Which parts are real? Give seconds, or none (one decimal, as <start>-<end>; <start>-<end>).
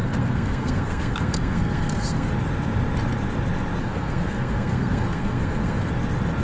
2.3-3.8; 5.9-6.4